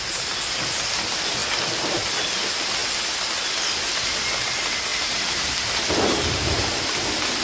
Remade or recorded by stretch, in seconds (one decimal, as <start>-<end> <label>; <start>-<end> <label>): 0.0-7.4 recorded